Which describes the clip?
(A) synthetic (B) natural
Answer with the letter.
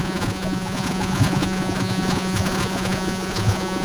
A